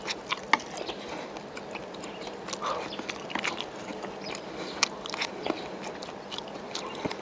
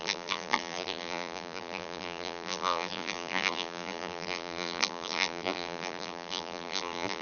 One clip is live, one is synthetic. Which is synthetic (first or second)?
second